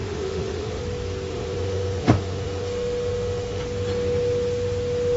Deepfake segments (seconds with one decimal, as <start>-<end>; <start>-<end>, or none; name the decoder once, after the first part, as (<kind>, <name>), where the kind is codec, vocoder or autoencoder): 0.0-0.8 (autoencoder, DAC-VAE); 1.3-3.6